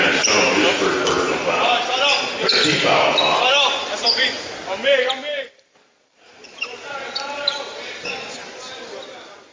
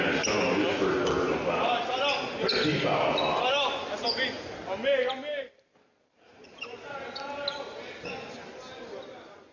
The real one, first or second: second